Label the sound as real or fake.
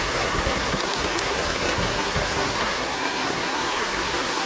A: fake